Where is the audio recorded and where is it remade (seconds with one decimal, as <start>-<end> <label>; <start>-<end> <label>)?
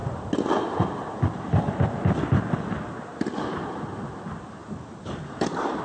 0.0-4.6 recorded; 4.6-5.8 remade